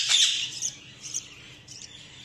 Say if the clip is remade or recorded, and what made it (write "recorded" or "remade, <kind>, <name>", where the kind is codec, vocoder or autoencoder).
remade, vocoder, BigVGAN v2